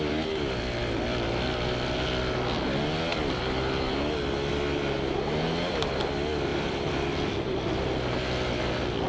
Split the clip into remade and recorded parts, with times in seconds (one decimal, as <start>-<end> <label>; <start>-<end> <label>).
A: 0.0-6.5 recorded; 6.5-7.9 remade; 7.9-9.1 recorded